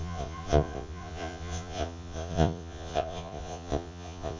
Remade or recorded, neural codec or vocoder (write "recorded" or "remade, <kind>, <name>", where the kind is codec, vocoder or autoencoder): remade, vocoder, Vocos